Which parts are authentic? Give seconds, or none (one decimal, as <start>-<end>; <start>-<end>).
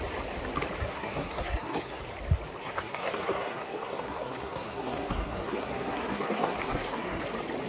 0.0-0.8; 2.0-2.6; 7.2-7.7